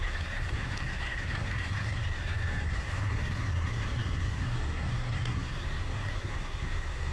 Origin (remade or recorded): remade